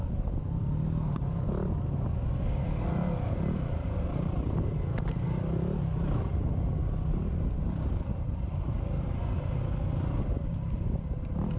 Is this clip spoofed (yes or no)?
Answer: no